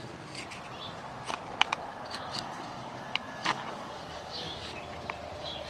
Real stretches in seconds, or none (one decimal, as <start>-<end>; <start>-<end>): 0.0-1.9; 4.7-5.7